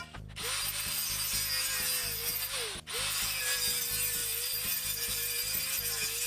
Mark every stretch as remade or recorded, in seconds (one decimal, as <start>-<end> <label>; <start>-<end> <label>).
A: 0.0-4.2 recorded; 4.2-4.8 remade; 4.8-6.3 recorded